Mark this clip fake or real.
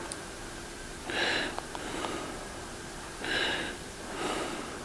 fake